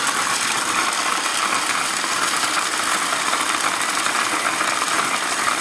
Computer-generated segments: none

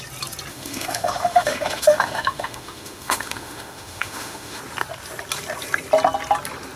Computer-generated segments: 0.5-4.6 (autoencoder, DAC-VAE)

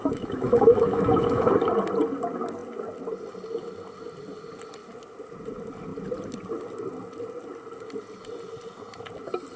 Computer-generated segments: 0.0-1.5 (autoencoder, DAC-VAE)

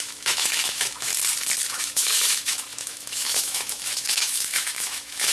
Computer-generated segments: 0.0-1.1 (autoencoder, DAC-VAE); 1.7-5.3

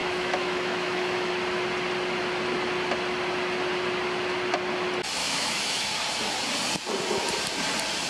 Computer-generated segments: 0.0-1.3 (autoencoder, DAC-VAE); 5.2-5.8

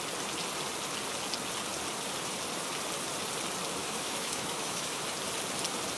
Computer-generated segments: 3.8-5.0 (autoencoder, DAC-VAE)

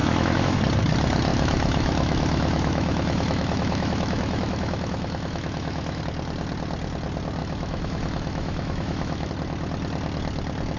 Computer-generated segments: 0.0-0.6 (autoencoder, DAC-VAE); 1.3-6.0; 7.4-9.3

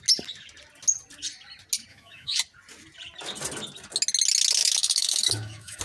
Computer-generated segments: 1.9-2.4 (autoencoder, DAC-VAE); 4.6-5.8